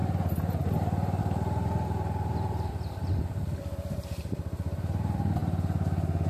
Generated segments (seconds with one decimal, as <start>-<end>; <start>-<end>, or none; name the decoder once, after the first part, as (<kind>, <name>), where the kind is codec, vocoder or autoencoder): 1.2-5.4 (vocoder, BigVGAN v2)